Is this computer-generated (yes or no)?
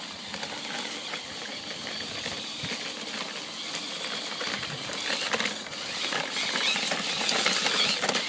no